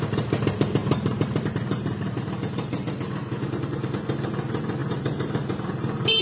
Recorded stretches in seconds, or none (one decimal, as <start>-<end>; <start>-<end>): 0.0-0.8; 2.9-4.8; 5.7-6.2